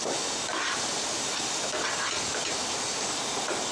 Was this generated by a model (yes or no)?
no